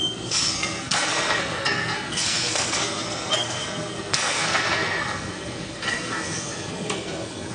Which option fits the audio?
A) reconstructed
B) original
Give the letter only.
A